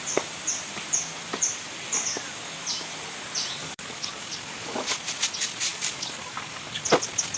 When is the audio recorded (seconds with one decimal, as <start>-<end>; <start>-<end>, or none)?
0.0-3.6; 4.9-5.7; 6.8-7.4